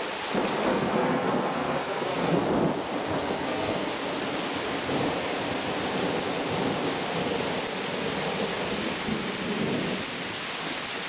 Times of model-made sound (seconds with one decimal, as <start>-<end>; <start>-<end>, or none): 0.7-2.4; 3.2-3.9